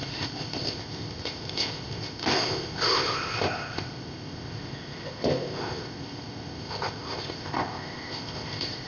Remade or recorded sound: remade